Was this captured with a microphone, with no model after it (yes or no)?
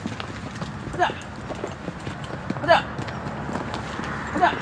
yes